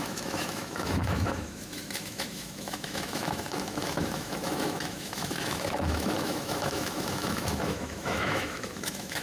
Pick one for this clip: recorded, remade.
remade